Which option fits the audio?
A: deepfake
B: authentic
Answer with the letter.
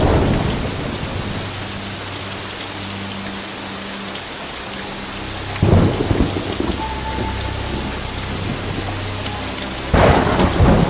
B